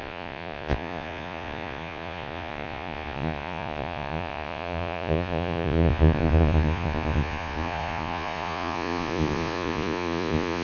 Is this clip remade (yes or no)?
yes